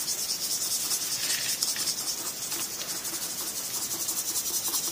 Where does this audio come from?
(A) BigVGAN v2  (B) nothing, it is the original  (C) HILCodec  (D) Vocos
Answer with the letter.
B